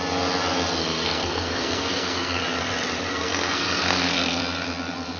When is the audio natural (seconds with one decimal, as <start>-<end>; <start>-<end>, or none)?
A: 0.0-0.8; 2.4-3.1; 4.4-5.2